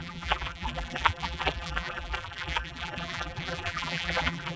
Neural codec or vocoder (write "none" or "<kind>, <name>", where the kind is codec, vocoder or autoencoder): vocoder, BigVGAN v2